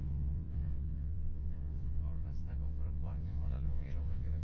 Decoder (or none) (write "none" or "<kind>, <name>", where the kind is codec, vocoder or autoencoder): vocoder, WaveNeXt